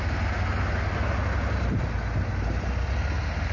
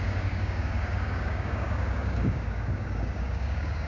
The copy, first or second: second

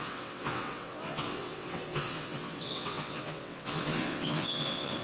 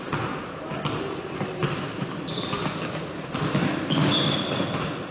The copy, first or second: first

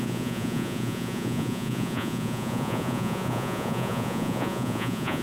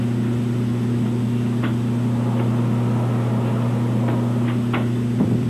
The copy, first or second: first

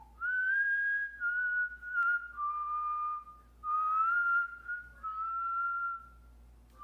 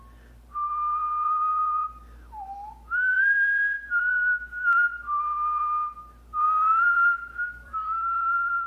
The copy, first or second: second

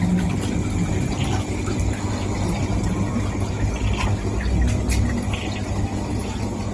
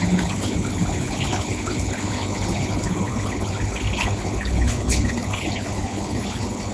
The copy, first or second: second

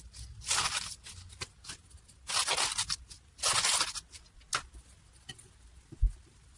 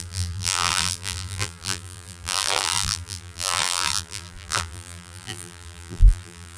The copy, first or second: second